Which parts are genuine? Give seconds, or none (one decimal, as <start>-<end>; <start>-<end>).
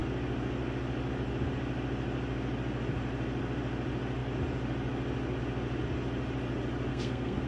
0.0-6.9